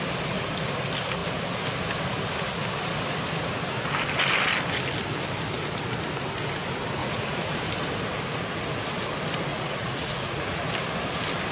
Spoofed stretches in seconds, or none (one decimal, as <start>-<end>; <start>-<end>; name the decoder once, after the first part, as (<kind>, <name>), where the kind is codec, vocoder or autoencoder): 7.0-7.6 (vocoder, Vocos); 9.5-10.6